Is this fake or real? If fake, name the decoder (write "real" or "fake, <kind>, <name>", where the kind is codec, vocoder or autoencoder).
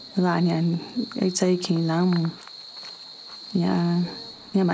real